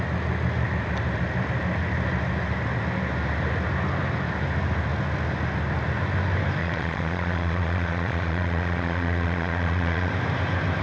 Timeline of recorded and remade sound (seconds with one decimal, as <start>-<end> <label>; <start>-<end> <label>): 0.0-6.6 recorded; 6.6-10.1 remade; 10.1-10.8 recorded